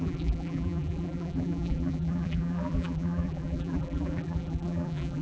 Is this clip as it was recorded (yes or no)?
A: no